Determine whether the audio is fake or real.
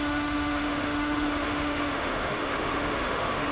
fake